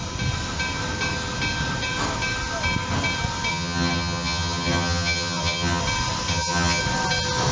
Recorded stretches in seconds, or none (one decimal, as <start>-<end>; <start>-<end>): 0.0-3.5; 5.8-6.3; 6.8-7.5